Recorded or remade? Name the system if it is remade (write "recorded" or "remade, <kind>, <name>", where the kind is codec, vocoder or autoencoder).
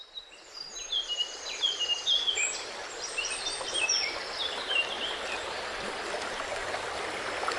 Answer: recorded